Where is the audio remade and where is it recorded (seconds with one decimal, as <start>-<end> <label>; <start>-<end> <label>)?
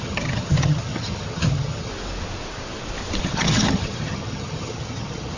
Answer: 0.0-1.9 remade; 1.9-3.2 recorded; 3.2-5.4 remade